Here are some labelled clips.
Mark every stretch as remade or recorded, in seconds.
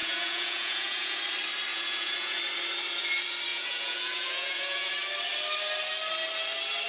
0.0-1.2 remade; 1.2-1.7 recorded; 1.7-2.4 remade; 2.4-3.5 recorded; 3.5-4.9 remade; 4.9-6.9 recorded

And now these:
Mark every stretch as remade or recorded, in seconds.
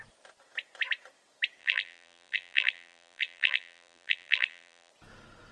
0.0-1.6 recorded; 1.6-4.9 remade; 4.9-5.5 recorded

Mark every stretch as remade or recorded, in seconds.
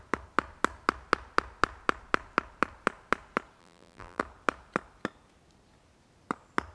0.0-3.6 recorded; 3.6-4.2 remade; 4.2-6.7 recorded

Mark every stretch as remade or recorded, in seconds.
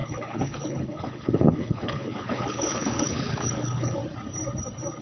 0.0-4.0 remade; 4.0-5.0 recorded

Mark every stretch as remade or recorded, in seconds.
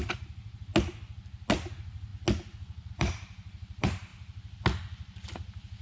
0.0-0.7 remade; 0.7-1.7 recorded; 1.7-2.1 remade; 2.1-2.9 recorded; 2.9-4.1 remade; 4.1-5.8 recorded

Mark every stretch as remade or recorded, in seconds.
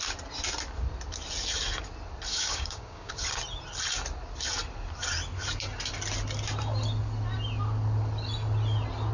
0.0-2.3 recorded; 2.3-3.1 remade; 3.1-9.1 recorded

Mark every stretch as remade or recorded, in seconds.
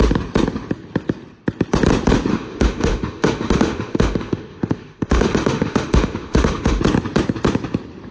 0.0-2.3 recorded; 2.3-6.8 remade; 6.8-8.1 recorded